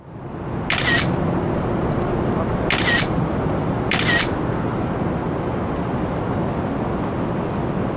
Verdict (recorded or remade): recorded